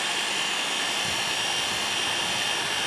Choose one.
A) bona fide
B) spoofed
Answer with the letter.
A